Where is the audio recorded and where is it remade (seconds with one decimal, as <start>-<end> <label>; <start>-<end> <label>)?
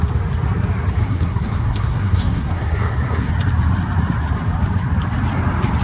0.0-1.0 recorded; 1.0-3.3 remade; 3.3-5.8 recorded